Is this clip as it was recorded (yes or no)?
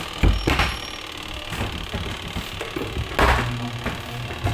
yes